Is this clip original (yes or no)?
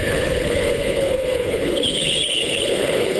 no